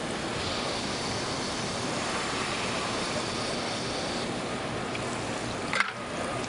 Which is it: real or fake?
real